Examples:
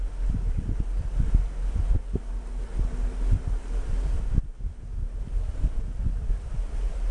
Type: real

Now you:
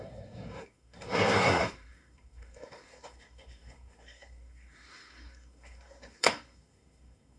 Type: fake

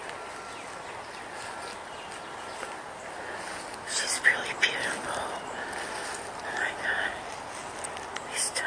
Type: real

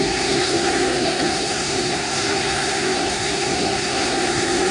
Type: fake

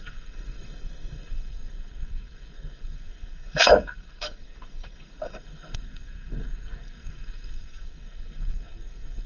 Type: fake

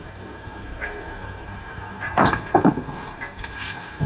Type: fake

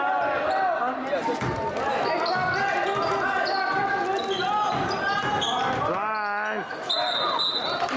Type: real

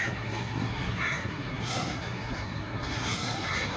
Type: fake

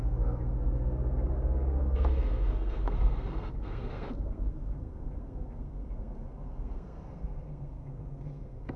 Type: fake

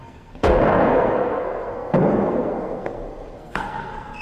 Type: fake